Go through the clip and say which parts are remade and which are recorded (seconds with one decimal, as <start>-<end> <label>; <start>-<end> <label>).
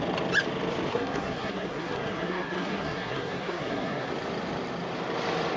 0.0-0.9 recorded; 0.9-4.1 remade; 4.1-5.6 recorded